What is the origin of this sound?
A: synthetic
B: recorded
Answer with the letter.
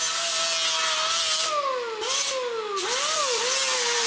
B